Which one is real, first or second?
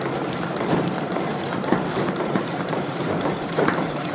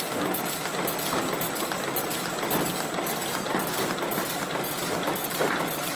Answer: second